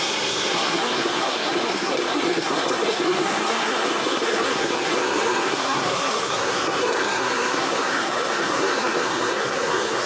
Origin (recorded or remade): remade